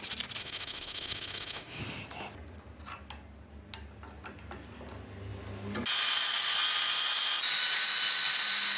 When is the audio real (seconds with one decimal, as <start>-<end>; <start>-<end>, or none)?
0.0-0.4; 1.8-8.8